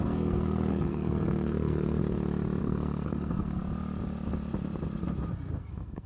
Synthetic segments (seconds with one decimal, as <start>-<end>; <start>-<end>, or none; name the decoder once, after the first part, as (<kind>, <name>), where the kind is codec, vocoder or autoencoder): 0.0-2.0 (codec, SNAC); 2.6-3.6; 5.6-6.1